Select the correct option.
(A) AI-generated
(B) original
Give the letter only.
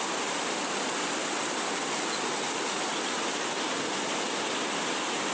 B